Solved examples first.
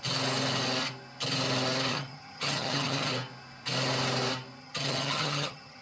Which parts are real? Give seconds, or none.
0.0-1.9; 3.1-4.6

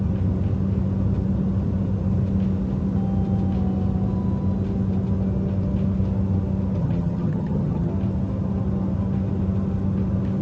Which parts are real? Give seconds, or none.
0.0-6.8; 7.9-10.4

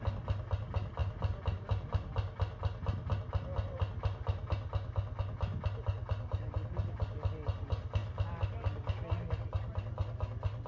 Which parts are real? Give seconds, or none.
0.0-10.7